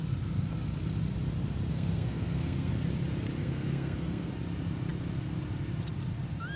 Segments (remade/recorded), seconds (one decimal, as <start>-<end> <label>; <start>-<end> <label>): 0.0-1.7 recorded; 1.7-2.7 remade; 2.7-3.4 recorded; 3.4-4.3 remade; 4.3-6.6 recorded